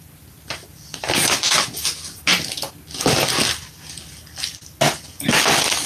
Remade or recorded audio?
recorded